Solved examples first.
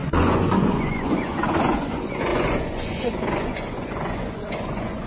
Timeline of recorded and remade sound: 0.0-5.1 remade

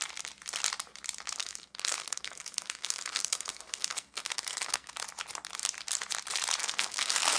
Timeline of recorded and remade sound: 0.0-1.4 recorded; 1.4-4.9 remade; 4.9-6.6 recorded; 6.6-7.4 remade

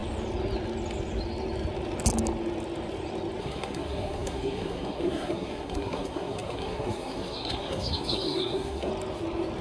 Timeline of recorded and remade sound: 0.0-3.4 recorded; 3.4-8.9 remade; 8.9-9.6 recorded

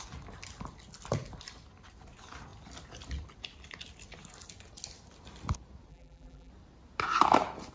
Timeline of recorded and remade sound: 0.0-5.9 recorded; 5.9-6.5 remade; 6.5-7.7 recorded

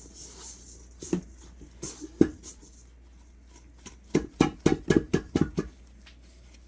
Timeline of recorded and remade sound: 0.0-6.7 recorded

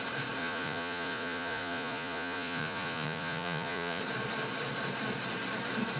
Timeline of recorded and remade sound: 0.0-0.4 recorded; 0.4-4.0 remade; 4.0-6.0 recorded

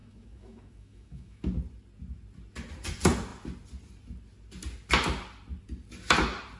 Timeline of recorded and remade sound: 0.0-1.4 remade; 1.4-6.6 recorded